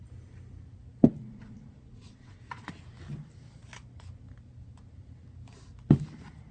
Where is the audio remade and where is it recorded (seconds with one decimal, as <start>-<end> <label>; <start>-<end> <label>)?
0.0-1.2 recorded; 1.2-2.7 remade; 2.7-6.5 recorded